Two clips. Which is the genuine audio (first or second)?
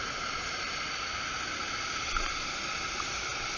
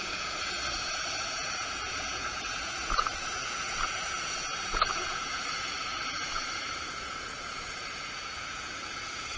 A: first